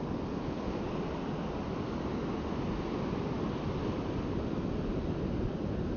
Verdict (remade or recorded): recorded